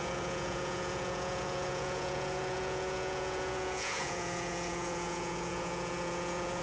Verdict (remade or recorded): remade